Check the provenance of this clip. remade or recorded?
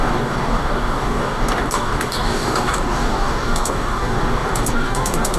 remade